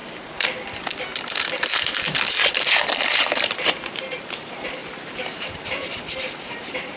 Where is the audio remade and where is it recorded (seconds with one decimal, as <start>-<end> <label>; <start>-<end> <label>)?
0.0-3.1 recorded; 3.1-7.0 remade